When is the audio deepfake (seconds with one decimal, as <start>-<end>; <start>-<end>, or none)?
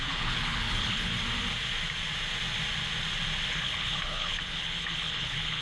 0.0-1.1; 3.5-5.6